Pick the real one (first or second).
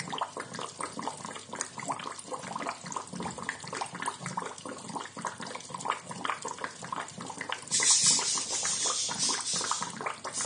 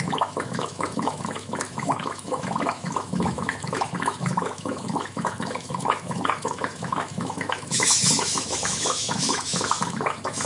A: first